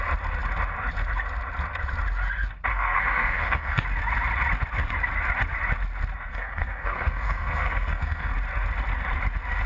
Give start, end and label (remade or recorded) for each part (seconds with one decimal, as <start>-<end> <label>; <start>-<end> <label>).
0.0-2.7 recorded; 2.7-3.8 remade; 3.8-6.3 recorded; 6.3-8.3 remade; 8.3-9.7 recorded